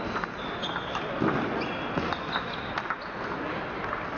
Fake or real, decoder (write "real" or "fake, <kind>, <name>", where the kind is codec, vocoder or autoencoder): real